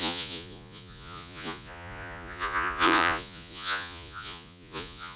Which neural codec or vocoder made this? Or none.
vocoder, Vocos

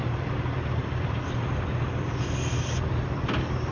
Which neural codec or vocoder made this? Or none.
vocoder, BigVGAN v2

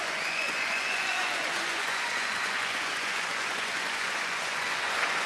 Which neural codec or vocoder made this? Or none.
vocoder, Vocos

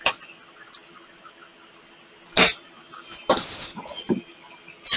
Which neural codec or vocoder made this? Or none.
none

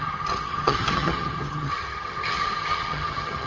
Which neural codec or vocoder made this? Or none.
vocoder, HiFi-GAN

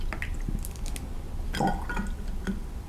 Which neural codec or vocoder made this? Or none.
none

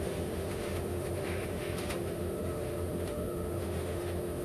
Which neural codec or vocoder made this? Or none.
autoencoder, DAC-VAE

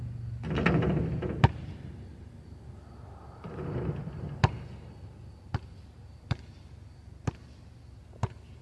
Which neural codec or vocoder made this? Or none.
none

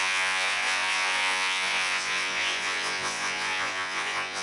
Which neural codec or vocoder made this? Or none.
vocoder, Vocos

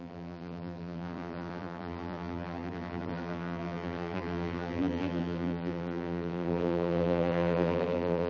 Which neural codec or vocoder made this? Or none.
vocoder, BigVGAN v2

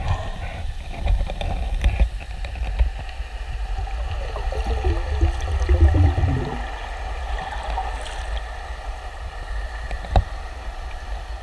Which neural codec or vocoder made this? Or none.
none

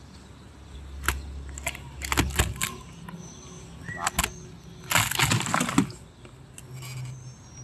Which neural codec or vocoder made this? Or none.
none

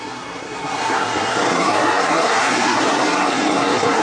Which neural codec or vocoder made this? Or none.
codec, SNAC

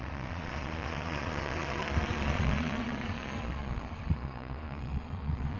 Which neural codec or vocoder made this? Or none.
vocoder, Vocos